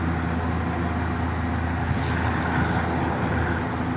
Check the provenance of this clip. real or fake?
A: real